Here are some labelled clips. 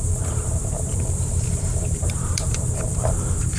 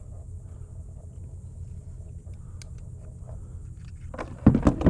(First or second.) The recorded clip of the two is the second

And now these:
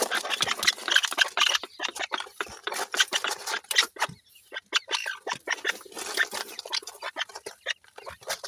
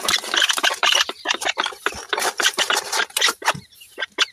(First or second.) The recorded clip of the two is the first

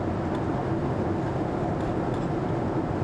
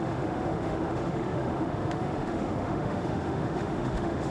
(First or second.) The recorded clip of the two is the first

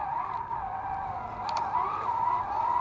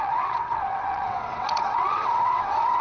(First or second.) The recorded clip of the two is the first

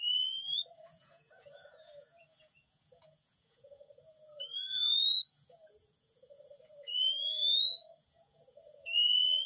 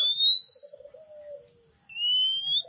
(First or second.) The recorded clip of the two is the second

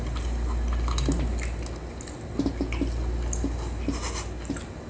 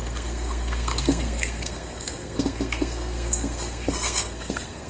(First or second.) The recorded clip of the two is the first